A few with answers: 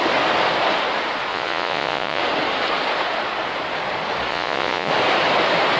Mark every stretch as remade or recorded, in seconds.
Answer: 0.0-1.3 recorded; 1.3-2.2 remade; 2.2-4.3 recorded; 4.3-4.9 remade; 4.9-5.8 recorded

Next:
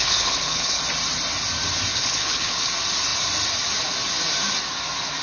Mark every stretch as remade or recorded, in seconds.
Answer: 0.0-0.8 remade; 0.8-1.9 recorded; 1.9-2.7 remade; 2.7-5.2 recorded

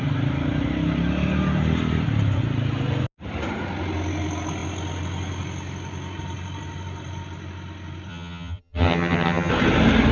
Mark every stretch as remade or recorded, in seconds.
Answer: 0.0-8.1 recorded; 8.1-9.5 remade; 9.5-10.1 recorded